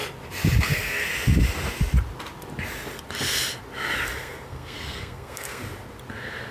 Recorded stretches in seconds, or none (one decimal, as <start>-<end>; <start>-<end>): 0.0-0.6; 1.1-4.2; 5.6-6.1